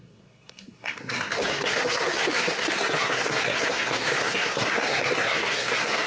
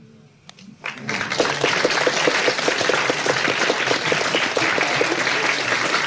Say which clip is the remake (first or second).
first